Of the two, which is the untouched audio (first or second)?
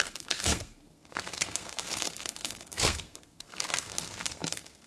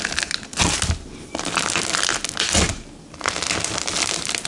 second